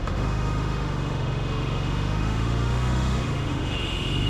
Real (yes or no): no